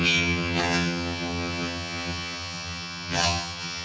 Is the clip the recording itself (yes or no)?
no